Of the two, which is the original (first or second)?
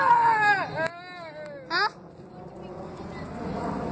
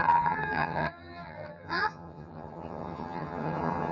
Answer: first